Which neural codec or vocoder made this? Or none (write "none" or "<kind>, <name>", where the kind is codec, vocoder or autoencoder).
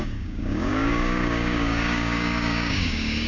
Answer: codec, DAC